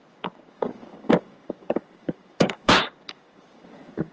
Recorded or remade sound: remade